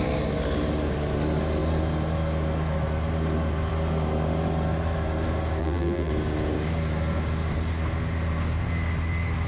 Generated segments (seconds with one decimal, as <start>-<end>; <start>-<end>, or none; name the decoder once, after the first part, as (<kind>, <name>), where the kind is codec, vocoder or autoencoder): 5.6-6.1 (vocoder, BigVGAN v2)